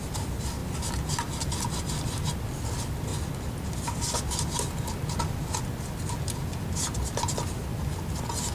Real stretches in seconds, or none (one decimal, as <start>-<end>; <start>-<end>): 0.0-8.5